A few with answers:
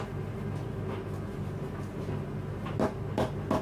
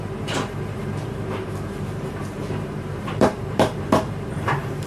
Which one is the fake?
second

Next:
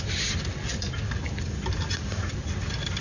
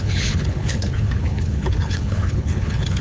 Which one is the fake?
second